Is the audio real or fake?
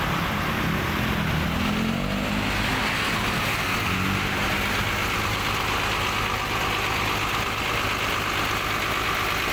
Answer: real